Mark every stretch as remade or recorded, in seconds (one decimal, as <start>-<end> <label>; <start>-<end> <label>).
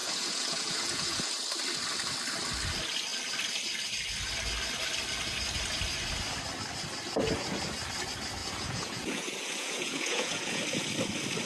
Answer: 0.0-1.3 remade; 1.3-8.4 recorded; 8.4-10.6 remade; 10.6-11.5 recorded